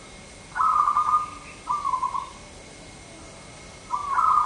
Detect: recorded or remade recorded